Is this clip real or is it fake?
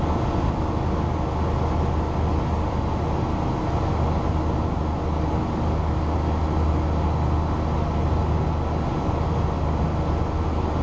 real